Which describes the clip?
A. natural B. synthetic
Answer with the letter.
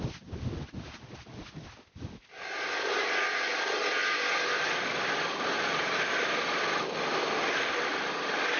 A